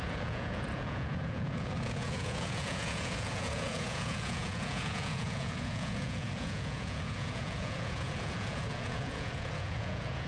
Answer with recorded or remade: remade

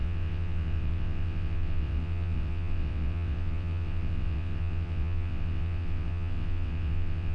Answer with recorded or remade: remade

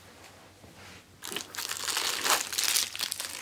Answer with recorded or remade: recorded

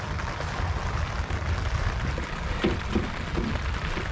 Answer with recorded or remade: recorded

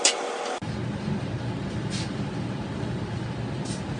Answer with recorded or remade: recorded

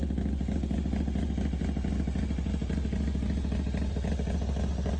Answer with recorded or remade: recorded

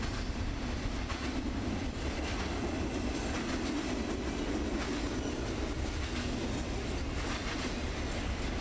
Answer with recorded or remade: recorded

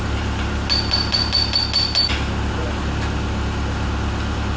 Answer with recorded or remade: recorded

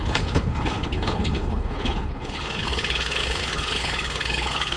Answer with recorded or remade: remade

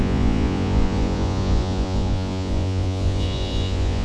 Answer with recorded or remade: remade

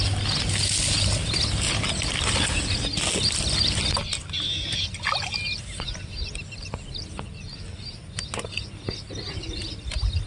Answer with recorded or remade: recorded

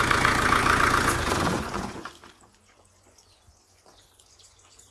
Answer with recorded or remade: remade